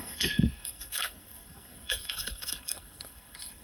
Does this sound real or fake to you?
fake